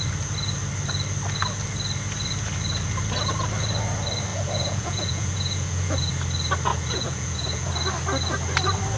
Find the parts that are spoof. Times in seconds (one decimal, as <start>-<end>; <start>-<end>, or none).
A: 4.3-6.1; 6.7-7.7